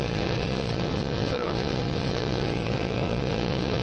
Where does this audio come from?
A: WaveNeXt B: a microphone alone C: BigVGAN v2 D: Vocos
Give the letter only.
A